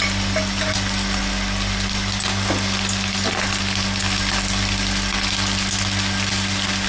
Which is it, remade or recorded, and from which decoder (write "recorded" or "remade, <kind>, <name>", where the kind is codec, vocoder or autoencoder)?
recorded